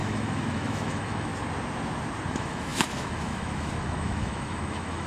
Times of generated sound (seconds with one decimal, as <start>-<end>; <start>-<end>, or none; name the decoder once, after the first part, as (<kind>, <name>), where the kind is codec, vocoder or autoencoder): 0.0-1.3 (autoencoder, DAC-VAE); 2.3-5.1